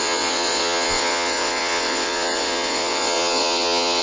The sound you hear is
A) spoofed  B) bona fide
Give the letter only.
A